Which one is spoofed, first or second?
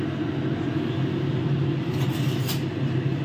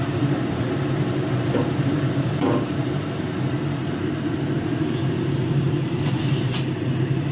second